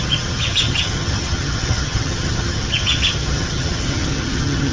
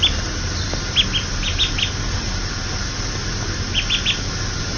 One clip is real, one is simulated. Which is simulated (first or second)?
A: first